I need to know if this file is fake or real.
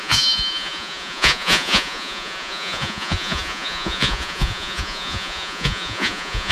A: fake